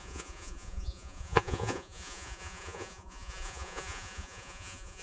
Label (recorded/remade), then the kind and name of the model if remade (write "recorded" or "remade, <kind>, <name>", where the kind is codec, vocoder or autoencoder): remade, vocoder, Vocos